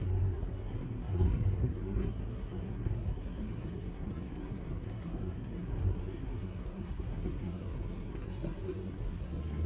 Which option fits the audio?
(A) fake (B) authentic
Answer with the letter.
A